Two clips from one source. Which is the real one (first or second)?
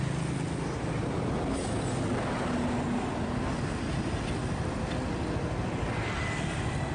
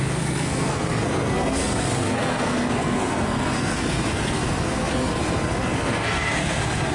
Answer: first